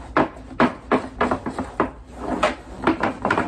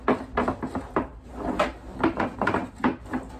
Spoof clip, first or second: first